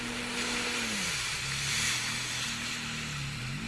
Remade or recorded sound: recorded